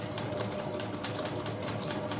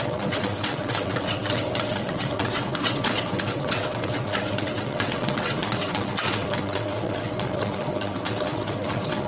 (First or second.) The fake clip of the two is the second